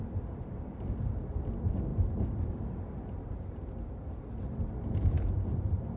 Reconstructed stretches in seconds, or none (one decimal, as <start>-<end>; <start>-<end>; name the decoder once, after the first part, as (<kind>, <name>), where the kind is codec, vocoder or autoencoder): 1.9-5.3 (vocoder, BigVGAN v2)